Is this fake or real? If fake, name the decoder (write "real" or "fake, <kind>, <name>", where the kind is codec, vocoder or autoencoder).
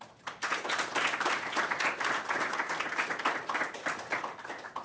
real